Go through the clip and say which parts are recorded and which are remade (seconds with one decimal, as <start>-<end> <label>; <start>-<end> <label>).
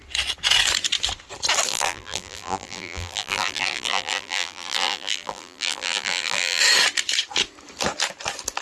0.0-1.7 recorded; 1.7-6.6 remade; 6.6-8.6 recorded